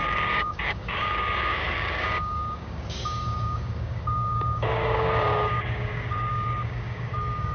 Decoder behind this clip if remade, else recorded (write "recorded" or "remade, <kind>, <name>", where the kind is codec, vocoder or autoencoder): remade, codec, DAC